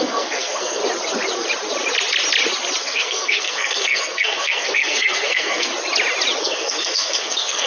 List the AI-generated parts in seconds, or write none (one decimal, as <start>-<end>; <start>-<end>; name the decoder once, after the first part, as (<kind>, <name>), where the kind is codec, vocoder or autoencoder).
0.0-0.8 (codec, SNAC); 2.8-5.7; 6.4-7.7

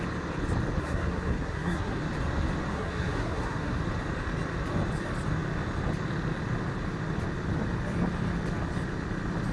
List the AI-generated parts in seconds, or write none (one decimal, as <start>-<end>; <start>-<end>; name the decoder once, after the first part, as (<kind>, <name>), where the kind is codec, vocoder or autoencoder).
0.8-2.0 (codec, SNAC); 2.7-3.8

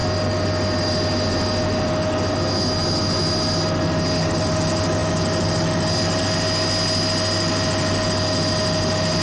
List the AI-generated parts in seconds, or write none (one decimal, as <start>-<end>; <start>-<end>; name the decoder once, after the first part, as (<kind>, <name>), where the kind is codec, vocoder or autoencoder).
none